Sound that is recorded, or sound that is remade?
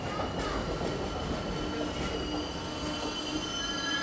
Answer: recorded